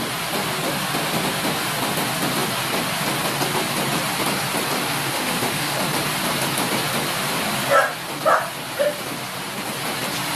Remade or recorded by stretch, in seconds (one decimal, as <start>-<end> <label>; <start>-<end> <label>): 0.0-5.0 recorded; 5.0-5.7 remade; 5.7-10.4 recorded